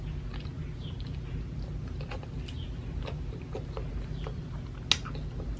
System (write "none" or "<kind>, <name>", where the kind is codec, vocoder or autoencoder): none